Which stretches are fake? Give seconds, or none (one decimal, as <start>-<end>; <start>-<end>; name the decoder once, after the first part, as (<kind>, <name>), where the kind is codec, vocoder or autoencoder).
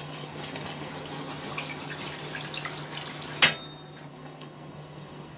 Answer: 0.0-0.9 (codec, SNAC); 4.1-5.4